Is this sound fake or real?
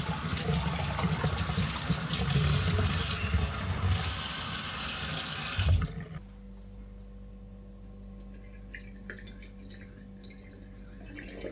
real